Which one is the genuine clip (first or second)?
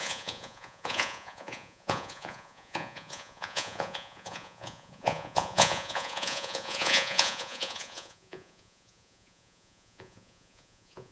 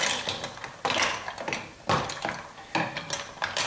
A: second